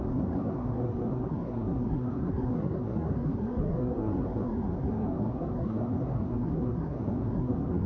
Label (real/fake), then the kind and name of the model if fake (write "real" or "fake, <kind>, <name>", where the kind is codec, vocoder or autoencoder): fake, codec, SNAC